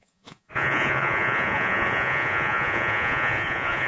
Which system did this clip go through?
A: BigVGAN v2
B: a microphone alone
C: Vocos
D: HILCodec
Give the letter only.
C